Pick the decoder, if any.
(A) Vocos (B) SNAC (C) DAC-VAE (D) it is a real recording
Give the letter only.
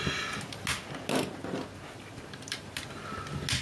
D